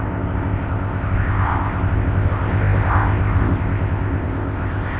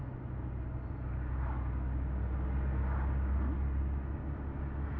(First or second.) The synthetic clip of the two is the first